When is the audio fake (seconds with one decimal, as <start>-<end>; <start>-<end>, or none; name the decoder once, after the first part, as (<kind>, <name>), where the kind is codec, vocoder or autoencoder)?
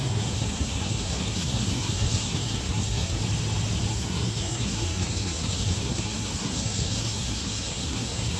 0.0-3.2 (codec, SNAC); 3.9-8.4